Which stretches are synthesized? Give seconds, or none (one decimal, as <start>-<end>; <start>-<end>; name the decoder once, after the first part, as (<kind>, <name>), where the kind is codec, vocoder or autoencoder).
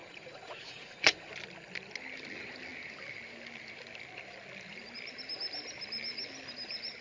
0.0-1.3 (vocoder, Vocos)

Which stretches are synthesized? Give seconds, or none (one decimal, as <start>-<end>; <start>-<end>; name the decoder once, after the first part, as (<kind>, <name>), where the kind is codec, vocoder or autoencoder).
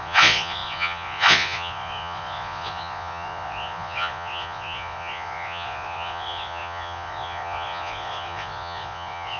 0.0-9.4 (vocoder, Vocos)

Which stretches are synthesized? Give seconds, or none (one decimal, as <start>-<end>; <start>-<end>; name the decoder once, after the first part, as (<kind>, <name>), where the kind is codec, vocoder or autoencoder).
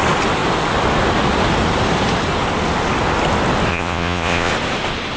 3.7-4.5 (vocoder, Vocos)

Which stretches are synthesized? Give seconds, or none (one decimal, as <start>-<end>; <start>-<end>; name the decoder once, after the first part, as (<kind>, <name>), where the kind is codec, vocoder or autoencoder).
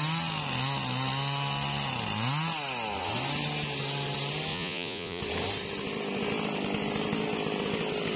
4.5-5.2 (vocoder, Vocos)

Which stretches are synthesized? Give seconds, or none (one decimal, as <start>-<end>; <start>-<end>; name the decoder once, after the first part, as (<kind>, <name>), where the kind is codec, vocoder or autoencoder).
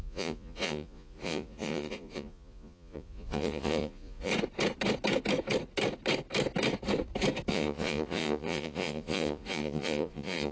0.0-4.3 (vocoder, Vocos); 7.5-10.5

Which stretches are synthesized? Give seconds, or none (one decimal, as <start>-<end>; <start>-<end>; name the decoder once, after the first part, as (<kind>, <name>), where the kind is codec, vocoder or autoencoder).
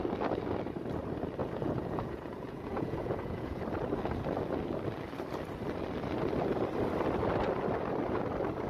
1.4-3.6 (vocoder, Vocos)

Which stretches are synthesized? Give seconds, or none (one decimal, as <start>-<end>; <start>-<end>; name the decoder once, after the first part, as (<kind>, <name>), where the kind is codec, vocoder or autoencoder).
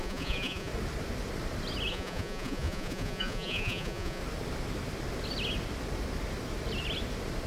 0.0-0.7 (vocoder, Vocos); 1.9-4.2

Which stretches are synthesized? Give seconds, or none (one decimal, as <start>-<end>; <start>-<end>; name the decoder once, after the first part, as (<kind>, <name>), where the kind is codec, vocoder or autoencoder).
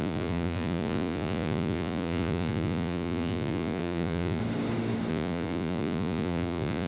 0.0-4.4 (vocoder, Vocos); 5.1-6.9